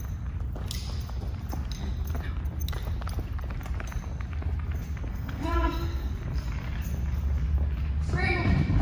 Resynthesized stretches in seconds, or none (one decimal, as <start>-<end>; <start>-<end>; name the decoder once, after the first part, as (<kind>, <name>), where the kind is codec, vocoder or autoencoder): 5.1-6.1 (codec, SNAC)